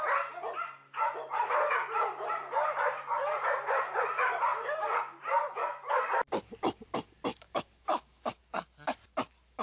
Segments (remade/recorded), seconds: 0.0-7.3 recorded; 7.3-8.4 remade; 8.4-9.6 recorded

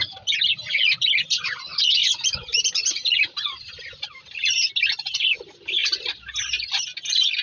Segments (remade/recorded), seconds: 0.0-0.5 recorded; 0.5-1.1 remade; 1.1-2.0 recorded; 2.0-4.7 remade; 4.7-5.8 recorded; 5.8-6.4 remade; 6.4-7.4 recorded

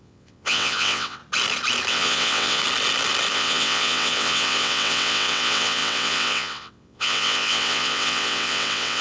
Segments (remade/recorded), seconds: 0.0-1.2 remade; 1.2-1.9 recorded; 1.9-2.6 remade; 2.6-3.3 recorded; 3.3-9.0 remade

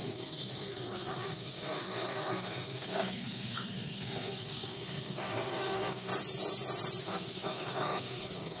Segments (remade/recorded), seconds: 0.0-6.1 remade; 6.1-7.0 recorded; 7.0-8.6 remade